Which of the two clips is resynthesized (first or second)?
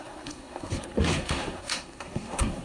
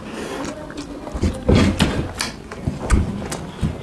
first